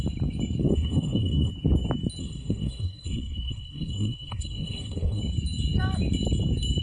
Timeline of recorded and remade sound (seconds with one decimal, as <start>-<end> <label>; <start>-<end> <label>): 0.0-0.6 recorded; 0.6-1.5 remade; 1.5-2.2 recorded; 2.2-5.2 remade; 5.2-6.8 recorded